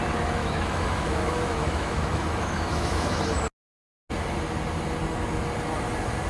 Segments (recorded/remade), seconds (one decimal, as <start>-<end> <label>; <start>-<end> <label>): 0.0-0.4 recorded; 0.4-3.2 remade; 3.2-6.3 recorded